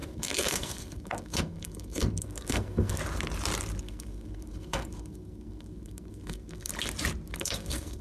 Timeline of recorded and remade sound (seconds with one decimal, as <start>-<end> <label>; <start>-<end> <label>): 0.0-3.0 remade; 3.0-3.8 recorded; 3.8-6.7 remade; 6.7-7.4 recorded; 7.4-8.0 remade